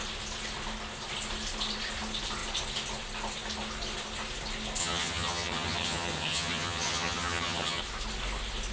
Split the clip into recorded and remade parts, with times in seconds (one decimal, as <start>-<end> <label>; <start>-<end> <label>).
0.0-4.8 recorded; 4.8-7.8 remade; 7.8-8.7 recorded